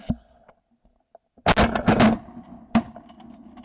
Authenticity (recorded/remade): recorded